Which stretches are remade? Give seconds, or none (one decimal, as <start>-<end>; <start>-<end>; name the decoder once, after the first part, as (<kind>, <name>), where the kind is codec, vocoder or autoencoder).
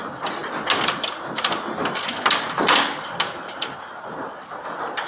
none